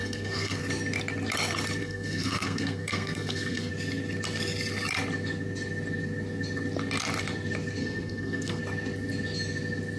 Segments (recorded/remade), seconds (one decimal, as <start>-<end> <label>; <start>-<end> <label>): 0.0-0.6 remade; 0.6-1.8 recorded; 1.8-3.7 remade; 3.7-7.8 recorded; 7.8-8.6 remade; 8.6-10.0 recorded